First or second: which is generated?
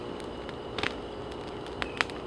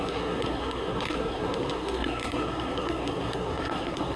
second